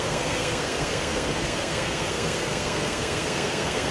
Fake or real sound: fake